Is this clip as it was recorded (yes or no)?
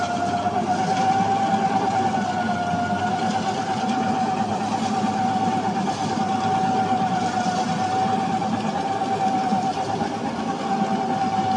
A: yes